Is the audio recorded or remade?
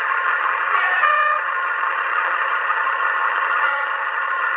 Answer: remade